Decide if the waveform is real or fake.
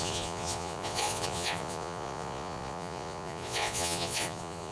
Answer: fake